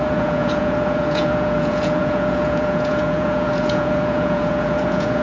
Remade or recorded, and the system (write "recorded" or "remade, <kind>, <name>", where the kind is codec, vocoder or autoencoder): remade, vocoder, Vocos